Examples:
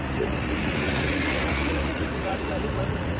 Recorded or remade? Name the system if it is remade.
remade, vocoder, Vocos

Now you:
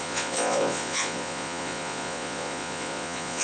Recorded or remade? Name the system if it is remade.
remade, vocoder, Vocos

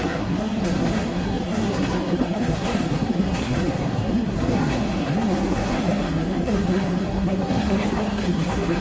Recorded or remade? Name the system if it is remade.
remade, codec, SNAC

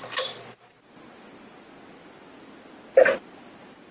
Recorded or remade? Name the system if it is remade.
recorded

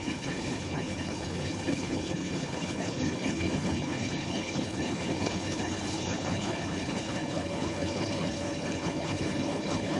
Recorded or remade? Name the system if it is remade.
remade, codec, HILCodec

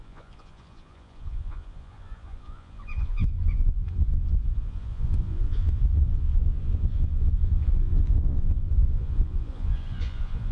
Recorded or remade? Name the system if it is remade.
remade, vocoder, Vocos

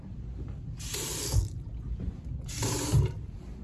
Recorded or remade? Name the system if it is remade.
recorded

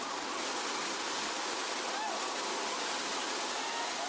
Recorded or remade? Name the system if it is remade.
recorded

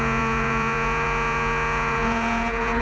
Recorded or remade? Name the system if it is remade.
remade, vocoder, Vocos